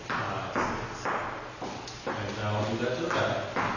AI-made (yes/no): no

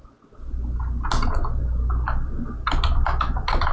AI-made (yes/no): no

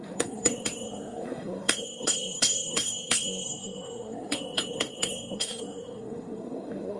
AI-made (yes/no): yes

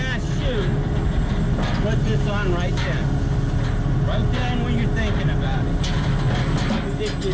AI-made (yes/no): no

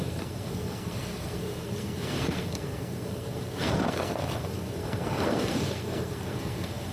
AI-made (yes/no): yes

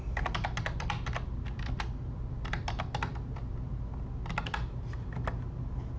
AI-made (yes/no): no